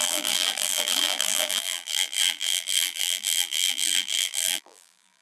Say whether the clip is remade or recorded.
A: remade